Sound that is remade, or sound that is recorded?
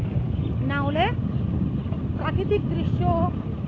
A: recorded